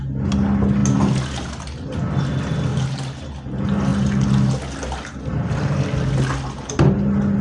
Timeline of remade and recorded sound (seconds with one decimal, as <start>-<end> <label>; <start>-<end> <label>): 0.0-7.4 recorded